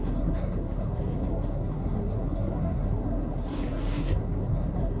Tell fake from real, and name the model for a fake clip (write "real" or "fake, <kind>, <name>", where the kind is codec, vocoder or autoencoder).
fake, codec, SNAC